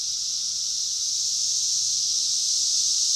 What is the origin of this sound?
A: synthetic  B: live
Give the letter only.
B